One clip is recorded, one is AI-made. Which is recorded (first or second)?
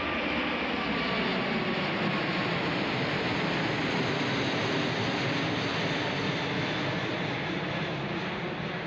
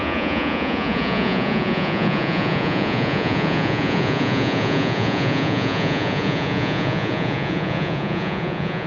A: first